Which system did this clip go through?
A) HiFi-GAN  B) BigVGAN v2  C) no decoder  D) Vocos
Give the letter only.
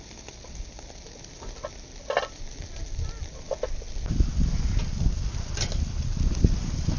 C